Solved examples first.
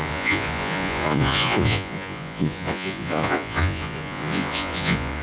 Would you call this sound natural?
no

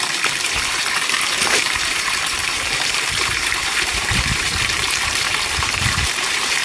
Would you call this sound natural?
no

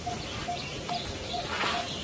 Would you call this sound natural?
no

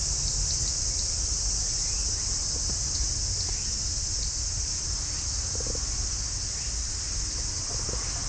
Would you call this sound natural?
yes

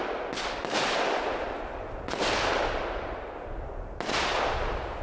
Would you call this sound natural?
yes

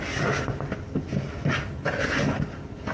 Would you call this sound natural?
yes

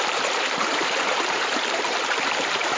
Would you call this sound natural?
no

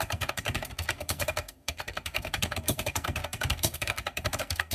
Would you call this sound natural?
no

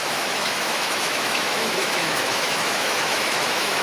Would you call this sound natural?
no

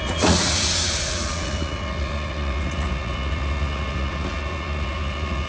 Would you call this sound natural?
no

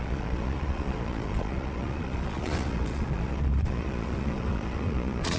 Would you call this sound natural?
no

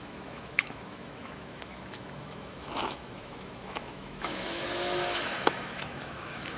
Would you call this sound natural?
no